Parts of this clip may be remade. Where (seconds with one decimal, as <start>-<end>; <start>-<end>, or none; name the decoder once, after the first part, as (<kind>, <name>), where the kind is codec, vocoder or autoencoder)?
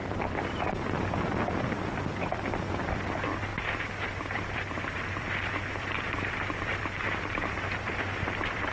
0.0-8.7 (vocoder, BigVGAN v2)